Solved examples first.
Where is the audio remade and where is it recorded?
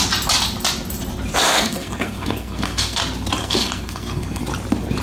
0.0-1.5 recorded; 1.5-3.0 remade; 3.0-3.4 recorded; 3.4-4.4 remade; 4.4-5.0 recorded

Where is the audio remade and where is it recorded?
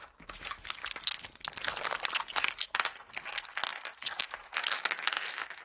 0.0-0.8 remade; 0.8-4.2 recorded; 4.2-5.6 remade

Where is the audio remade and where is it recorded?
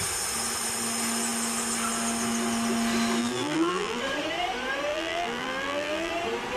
0.0-3.2 recorded; 3.2-4.0 remade; 4.0-4.9 recorded; 4.9-6.1 remade; 6.1-6.6 recorded